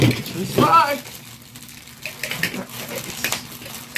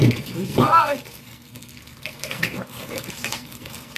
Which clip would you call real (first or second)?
first